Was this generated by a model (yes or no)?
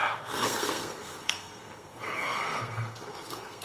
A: yes